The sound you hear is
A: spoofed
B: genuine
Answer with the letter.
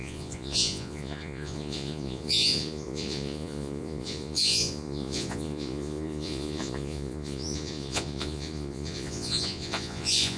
A